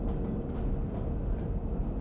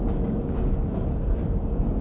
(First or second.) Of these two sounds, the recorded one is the first